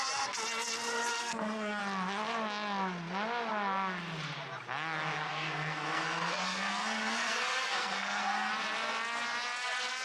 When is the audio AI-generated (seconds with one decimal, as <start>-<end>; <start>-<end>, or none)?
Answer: 1.1-1.8; 5.3-8.5